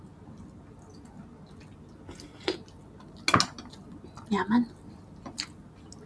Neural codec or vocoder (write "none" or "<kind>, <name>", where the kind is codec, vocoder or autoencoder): none